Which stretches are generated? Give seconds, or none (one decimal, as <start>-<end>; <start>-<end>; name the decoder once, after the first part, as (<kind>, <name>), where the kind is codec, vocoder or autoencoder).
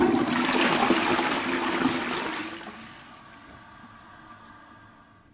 none